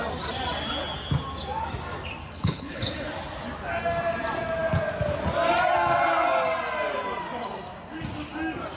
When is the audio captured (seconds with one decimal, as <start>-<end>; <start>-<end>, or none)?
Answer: 0.0-2.2; 2.8-8.8